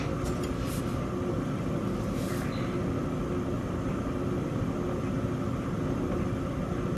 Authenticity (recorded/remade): recorded